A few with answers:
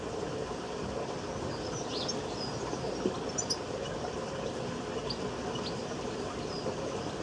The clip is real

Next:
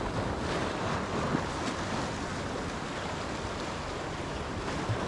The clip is real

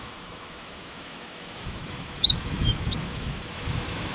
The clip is fake